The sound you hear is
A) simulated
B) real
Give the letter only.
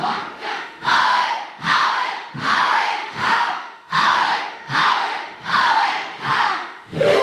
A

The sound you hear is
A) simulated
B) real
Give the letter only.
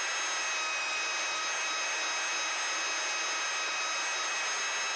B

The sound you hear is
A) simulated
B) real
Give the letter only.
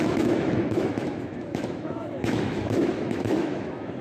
A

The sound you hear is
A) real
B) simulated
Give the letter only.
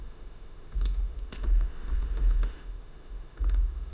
B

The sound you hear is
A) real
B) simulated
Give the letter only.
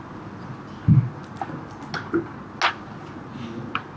A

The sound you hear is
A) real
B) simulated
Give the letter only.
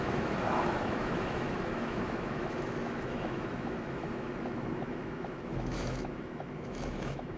B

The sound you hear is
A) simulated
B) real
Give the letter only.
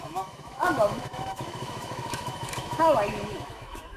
A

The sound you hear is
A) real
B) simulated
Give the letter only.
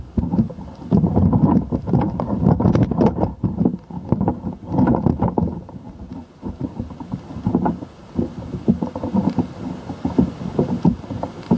A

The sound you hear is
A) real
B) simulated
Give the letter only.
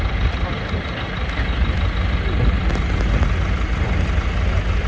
A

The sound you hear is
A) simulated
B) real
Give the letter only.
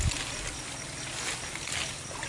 B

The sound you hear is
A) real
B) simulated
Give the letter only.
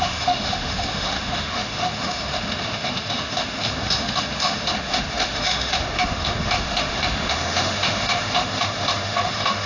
B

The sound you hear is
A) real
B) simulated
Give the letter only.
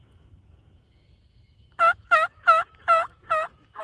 B